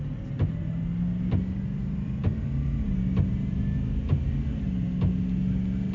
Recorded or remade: recorded